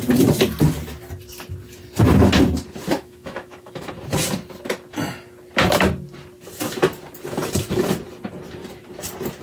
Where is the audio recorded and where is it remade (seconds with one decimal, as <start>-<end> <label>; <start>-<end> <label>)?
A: 0.0-2.9 recorded; 2.9-3.9 remade; 3.9-9.4 recorded